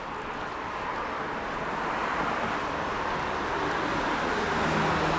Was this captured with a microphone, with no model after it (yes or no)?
yes